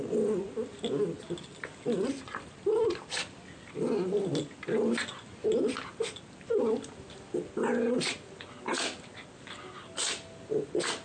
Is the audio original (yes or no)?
yes